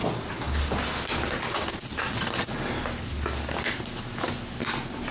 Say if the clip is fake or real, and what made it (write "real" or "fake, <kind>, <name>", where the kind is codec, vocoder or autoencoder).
real